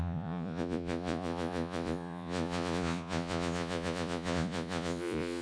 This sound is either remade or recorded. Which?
remade